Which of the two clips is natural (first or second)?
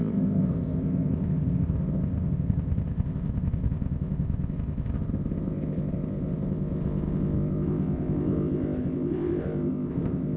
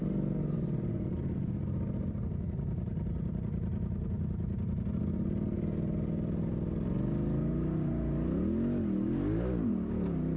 second